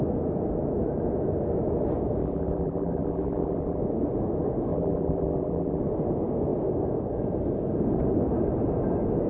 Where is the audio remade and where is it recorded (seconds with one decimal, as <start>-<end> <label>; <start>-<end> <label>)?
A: 0.0-2.2 recorded; 2.2-3.8 remade; 3.8-4.7 recorded; 4.7-5.8 remade; 5.8-9.3 recorded